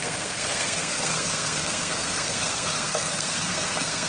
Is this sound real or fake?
fake